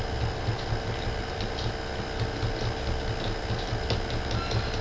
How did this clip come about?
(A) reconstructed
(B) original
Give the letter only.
B